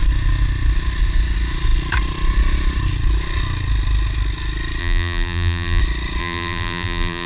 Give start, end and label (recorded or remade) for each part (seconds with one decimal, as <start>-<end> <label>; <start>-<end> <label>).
0.0-4.8 recorded; 4.8-5.8 remade; 5.8-6.2 recorded; 6.2-7.3 remade